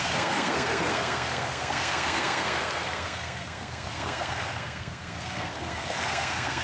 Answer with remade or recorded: remade